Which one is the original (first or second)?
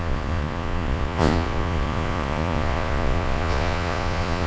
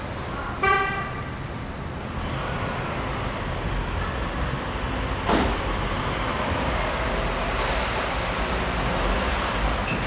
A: second